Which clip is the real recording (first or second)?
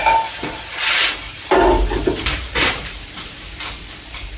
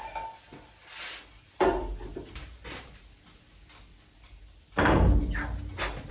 second